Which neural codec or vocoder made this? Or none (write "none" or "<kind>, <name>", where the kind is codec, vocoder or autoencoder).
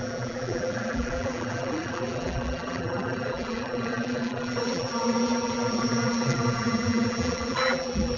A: vocoder, BigVGAN v2